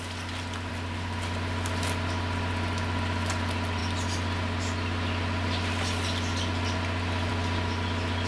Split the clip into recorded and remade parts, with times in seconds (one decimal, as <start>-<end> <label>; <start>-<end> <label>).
0.0-8.3 recorded